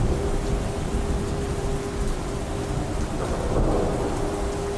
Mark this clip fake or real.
real